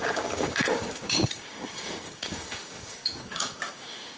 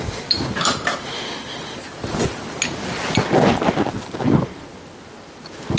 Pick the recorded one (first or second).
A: second